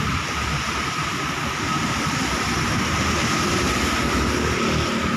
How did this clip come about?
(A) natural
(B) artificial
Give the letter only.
A